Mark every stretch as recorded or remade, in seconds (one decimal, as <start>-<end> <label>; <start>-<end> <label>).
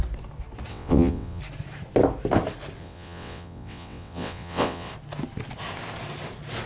0.0-0.7 recorded; 0.7-1.4 remade; 1.4-2.8 recorded; 2.8-4.9 remade; 4.9-6.7 recorded